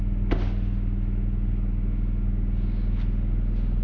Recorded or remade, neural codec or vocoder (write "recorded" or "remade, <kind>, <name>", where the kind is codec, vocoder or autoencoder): recorded